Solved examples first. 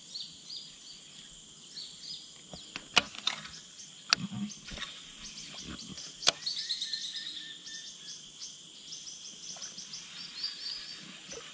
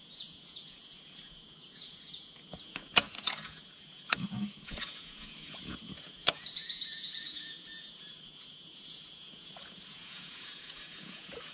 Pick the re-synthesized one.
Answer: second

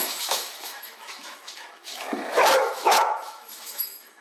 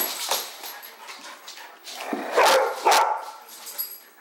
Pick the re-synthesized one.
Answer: first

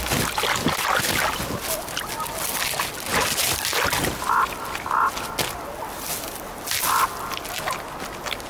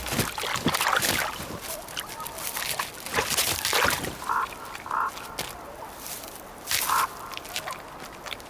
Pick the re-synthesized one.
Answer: second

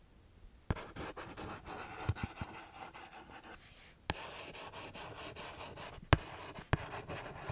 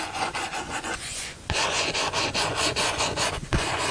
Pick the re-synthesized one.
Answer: second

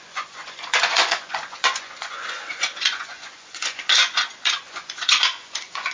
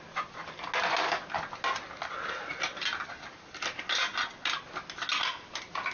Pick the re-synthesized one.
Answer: first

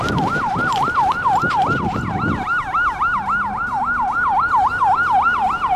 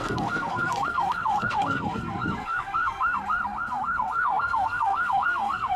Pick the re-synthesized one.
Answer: second